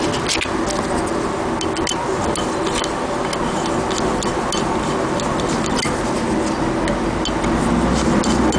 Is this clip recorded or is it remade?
recorded